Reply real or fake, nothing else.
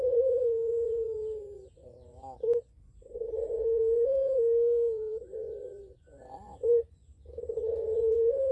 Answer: fake